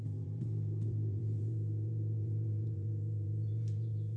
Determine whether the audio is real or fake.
fake